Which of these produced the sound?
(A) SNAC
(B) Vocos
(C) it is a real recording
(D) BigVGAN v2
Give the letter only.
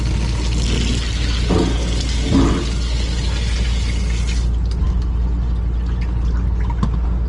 C